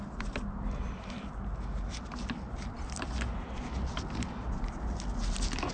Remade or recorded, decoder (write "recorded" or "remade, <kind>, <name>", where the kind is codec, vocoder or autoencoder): recorded